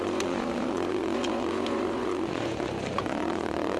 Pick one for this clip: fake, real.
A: fake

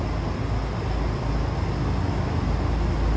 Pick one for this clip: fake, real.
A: real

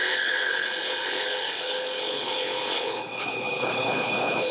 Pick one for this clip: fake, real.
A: fake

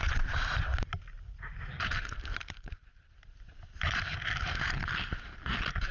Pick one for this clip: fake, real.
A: real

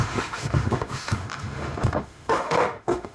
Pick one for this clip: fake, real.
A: fake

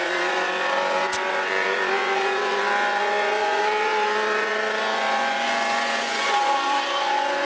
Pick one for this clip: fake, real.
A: fake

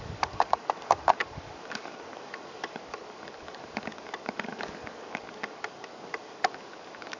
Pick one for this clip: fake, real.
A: fake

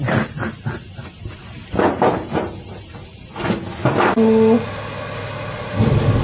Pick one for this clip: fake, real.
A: real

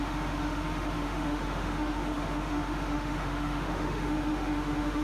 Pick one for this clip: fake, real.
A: fake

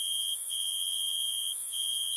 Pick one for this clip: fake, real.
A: fake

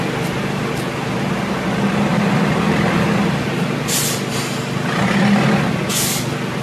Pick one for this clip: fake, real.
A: real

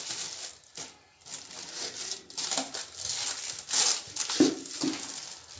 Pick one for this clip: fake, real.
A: real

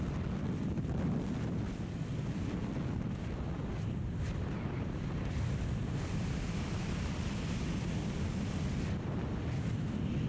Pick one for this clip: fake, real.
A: real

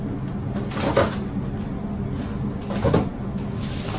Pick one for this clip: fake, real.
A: real